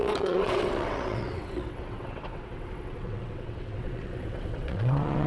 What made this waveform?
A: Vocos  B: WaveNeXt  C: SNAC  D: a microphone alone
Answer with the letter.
B